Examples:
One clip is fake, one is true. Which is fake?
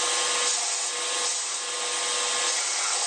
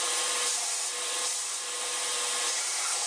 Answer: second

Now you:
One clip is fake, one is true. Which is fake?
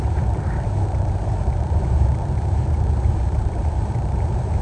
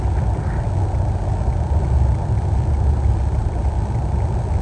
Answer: first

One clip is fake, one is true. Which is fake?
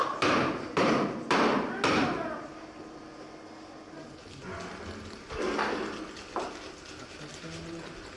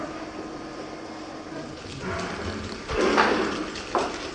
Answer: second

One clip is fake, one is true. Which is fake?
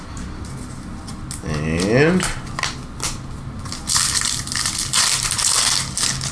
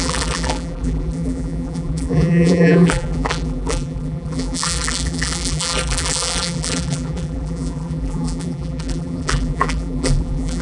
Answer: second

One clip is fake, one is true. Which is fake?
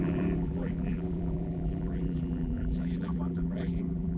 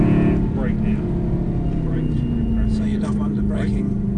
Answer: first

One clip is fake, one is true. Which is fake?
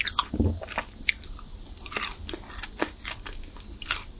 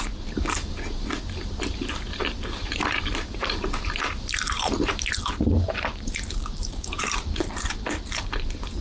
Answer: second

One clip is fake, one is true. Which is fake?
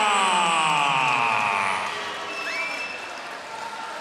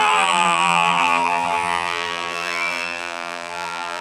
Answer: second